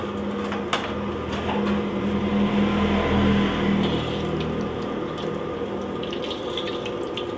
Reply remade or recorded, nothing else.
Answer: recorded